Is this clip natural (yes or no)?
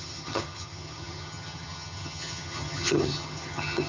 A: no